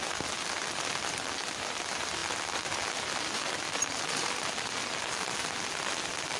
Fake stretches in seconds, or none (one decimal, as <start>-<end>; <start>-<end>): none